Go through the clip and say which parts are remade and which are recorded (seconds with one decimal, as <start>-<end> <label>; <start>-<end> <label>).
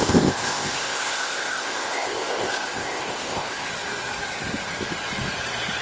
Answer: 0.0-3.7 remade; 3.7-5.8 recorded